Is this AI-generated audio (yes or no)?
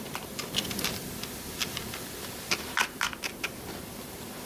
no